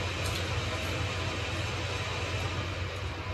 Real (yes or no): yes